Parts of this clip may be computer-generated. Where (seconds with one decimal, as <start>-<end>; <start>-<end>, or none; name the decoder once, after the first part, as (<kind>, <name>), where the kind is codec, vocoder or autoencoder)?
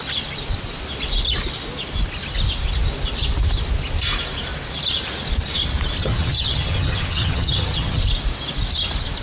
6.0-8.0 (vocoder, HiFi-GAN)